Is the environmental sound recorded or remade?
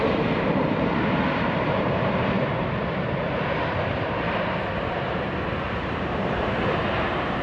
remade